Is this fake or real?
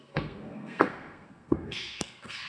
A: fake